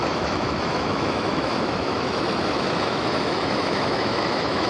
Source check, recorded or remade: remade